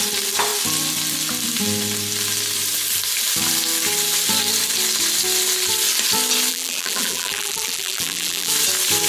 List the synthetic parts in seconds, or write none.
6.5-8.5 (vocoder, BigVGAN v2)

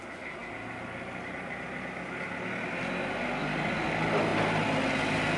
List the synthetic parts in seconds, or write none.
none

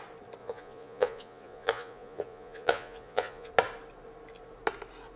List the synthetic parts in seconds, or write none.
0.4-3.5 (vocoder, Vocos)